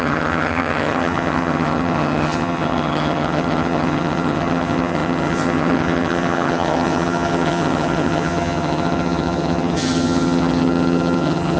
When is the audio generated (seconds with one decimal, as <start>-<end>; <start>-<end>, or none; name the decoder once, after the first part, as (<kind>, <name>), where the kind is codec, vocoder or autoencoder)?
0.0-11.6 (vocoder, HiFi-GAN)